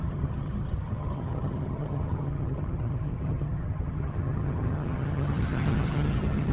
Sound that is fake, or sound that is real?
fake